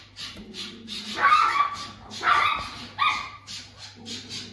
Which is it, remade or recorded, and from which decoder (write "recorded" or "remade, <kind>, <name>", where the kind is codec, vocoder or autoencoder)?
recorded